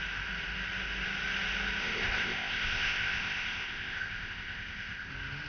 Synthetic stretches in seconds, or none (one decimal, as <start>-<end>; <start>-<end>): 1.8-5.1